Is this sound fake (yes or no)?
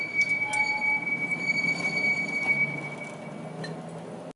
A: no